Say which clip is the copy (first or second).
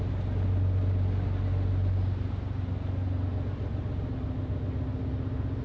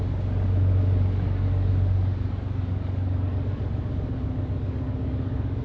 second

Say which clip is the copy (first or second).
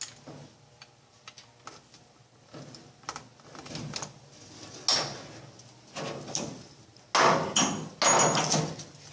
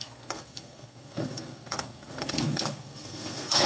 second